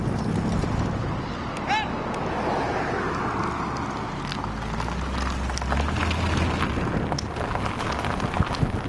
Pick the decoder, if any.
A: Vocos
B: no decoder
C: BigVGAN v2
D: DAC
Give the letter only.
B